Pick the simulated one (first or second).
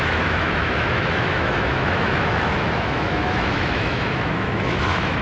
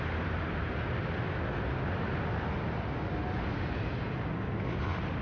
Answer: first